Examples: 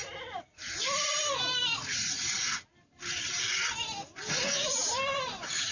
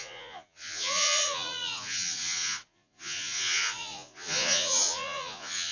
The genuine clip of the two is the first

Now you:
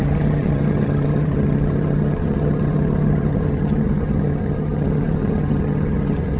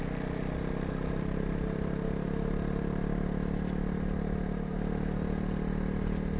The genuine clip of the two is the second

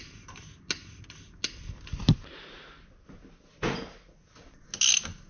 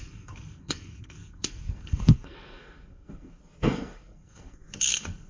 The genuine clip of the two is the first